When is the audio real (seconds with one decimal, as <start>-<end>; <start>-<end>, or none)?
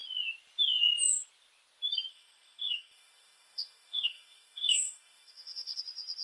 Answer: 0.0-2.1; 5.8-6.2